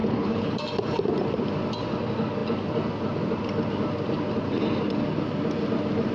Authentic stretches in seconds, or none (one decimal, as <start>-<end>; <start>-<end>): 0.6-6.1